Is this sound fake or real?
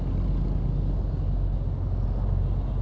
real